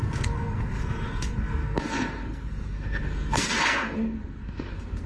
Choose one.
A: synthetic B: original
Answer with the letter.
A